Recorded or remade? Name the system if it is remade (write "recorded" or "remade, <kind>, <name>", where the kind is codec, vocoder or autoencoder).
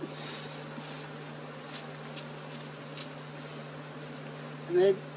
recorded